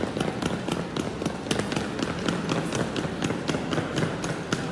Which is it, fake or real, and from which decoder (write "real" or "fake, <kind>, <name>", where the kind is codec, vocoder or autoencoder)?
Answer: real